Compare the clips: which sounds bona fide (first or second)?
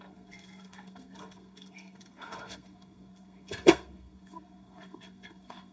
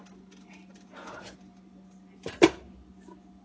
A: second